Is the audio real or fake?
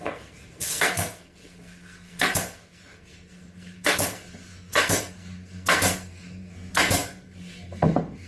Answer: fake